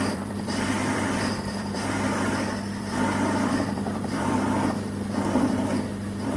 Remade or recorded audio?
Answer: remade